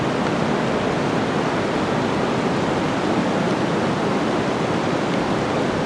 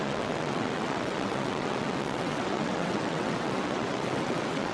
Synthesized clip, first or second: second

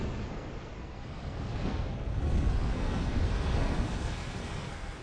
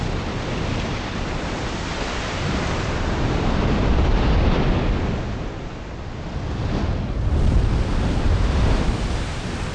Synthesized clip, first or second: first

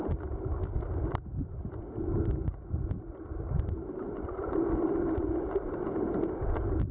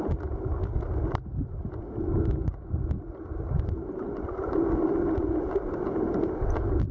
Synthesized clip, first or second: first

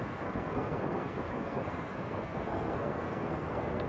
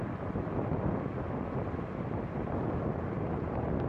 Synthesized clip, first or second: first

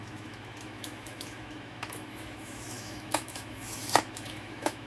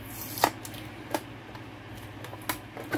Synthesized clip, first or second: first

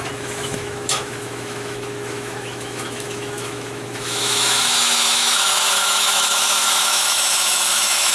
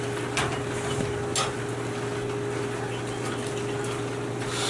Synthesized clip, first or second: first